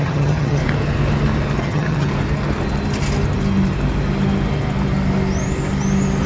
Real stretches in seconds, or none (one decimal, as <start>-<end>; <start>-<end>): 0.6-1.6; 2.1-6.3